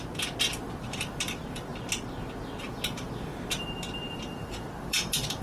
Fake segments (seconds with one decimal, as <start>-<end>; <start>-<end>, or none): 0.0-1.7; 2.6-3.3; 4.1-5.4